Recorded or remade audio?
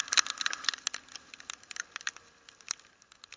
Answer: recorded